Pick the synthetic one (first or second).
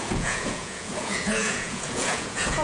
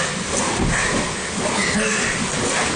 first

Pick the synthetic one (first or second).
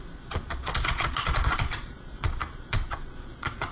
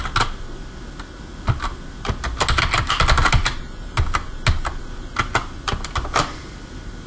first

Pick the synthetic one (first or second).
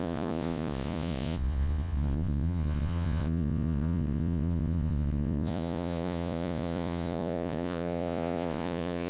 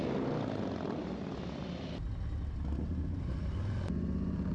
first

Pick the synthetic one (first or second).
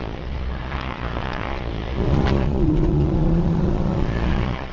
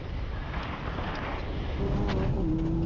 first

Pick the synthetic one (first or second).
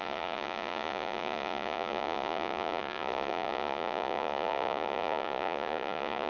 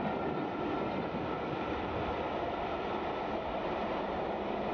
first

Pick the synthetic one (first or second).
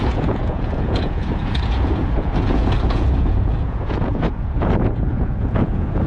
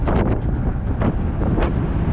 first